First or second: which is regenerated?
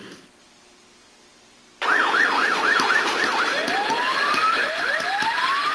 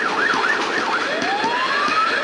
first